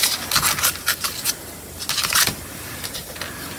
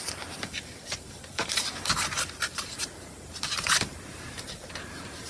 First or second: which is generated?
second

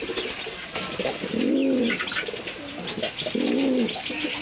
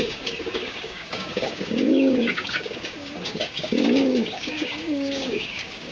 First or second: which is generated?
second